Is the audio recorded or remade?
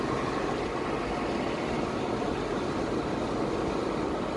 recorded